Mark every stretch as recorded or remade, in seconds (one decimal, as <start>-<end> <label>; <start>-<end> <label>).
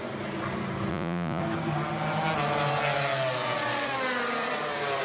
0.0-0.9 recorded; 0.9-1.4 remade; 1.4-5.0 recorded